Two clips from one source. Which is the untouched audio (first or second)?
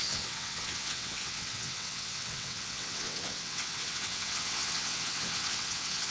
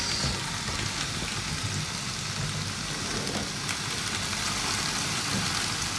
second